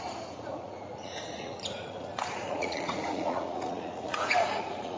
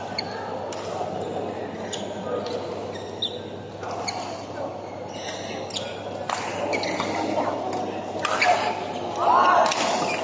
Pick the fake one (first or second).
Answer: first